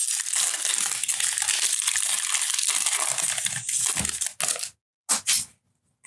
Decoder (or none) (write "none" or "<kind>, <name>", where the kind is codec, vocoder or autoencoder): none